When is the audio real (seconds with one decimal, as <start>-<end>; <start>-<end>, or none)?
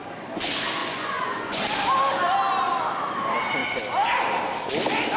0.0-0.8; 1.6-5.2